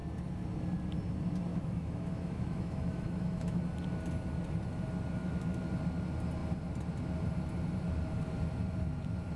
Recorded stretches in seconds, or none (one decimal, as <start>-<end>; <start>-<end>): 0.0-1.5; 3.6-5.2; 5.7-9.4